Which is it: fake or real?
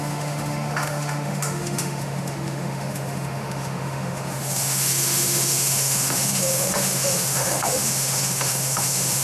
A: fake